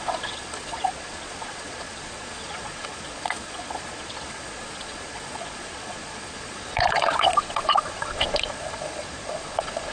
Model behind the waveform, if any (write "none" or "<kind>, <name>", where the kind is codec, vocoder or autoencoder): vocoder, Vocos